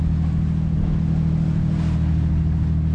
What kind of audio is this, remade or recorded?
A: recorded